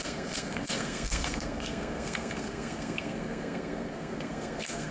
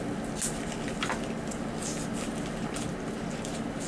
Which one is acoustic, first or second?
second